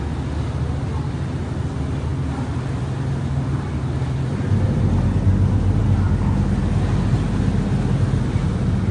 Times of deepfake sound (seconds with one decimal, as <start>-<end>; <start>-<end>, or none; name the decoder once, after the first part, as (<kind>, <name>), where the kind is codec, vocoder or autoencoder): 2.1-5.8 (vocoder, BigVGAN v2)